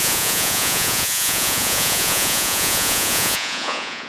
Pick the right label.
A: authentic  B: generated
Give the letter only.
B